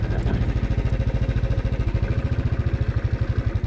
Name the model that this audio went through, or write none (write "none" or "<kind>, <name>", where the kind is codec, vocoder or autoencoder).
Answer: none